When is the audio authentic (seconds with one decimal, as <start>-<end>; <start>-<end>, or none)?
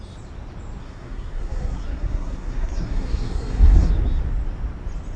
0.0-0.8; 3.9-5.2